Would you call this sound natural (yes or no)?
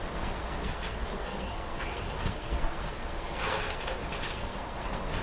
no